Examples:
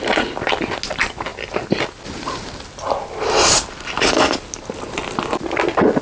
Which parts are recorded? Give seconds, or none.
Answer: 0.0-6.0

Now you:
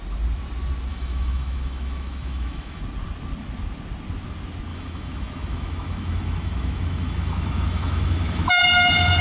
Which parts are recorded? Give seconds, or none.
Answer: 0.0-0.9; 2.8-4.7; 8.6-9.2